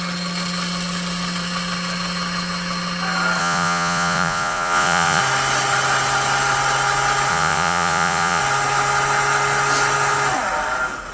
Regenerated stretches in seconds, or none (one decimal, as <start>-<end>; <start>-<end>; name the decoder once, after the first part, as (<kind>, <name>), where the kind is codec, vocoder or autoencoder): 3.4-5.2 (vocoder, Vocos); 7.3-8.4